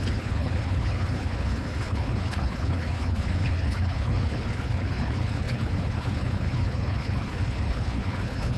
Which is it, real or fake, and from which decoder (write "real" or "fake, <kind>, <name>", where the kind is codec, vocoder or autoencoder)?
fake, codec, HILCodec